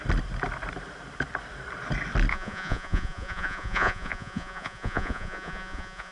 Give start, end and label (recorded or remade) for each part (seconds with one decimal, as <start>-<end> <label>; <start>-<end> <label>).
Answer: 0.0-2.3 recorded; 2.3-6.1 remade